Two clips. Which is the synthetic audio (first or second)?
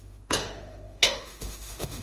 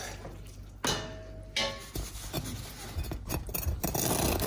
first